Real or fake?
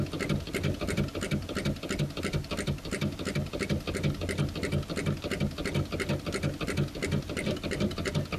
real